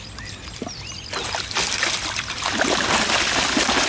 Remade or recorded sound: recorded